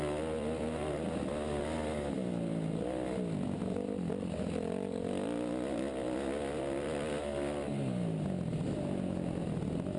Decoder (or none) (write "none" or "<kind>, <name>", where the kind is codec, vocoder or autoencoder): none